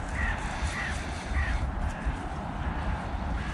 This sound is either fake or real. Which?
real